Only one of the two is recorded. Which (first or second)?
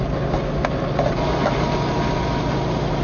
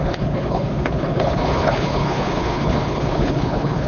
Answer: first